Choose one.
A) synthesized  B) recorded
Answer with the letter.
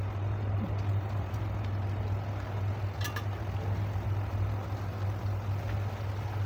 B